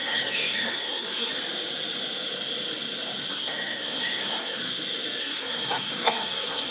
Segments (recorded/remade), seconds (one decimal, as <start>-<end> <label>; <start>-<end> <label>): 0.0-1.3 remade; 1.3-3.3 recorded; 3.3-4.6 remade; 4.6-5.2 recorded; 5.2-6.7 remade